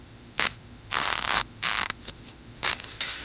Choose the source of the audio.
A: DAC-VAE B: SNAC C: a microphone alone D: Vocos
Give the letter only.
A